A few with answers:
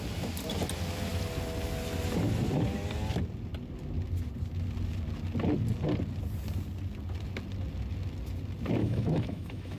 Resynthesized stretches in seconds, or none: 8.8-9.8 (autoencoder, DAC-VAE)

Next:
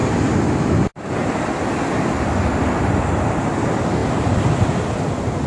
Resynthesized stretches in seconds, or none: none

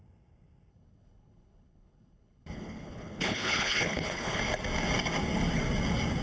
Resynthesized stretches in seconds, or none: 0.7-4.4 (codec, HILCodec)